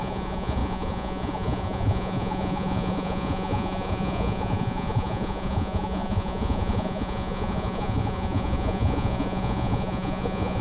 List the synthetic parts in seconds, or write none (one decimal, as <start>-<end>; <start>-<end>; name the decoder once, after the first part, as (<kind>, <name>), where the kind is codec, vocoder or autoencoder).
0.0-10.6 (vocoder, Vocos)